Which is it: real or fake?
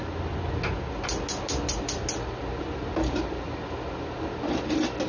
real